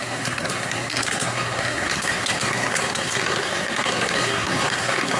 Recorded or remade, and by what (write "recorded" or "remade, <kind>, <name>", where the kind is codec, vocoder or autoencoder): remade, codec, SNAC